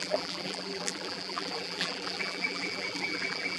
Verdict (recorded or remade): remade